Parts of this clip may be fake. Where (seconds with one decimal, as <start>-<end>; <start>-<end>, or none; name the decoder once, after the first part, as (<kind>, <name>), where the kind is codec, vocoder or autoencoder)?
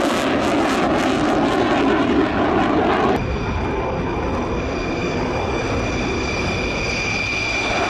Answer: 5.0-5.6 (codec, DAC)